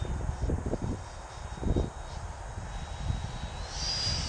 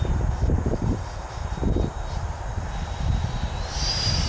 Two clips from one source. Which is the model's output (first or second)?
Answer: second